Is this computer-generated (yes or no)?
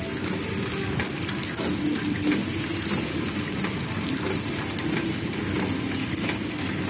no